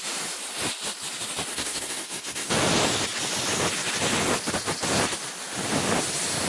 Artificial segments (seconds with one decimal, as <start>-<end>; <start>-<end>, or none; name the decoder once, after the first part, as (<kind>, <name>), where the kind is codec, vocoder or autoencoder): 1.5-2.5 (codec, SNAC)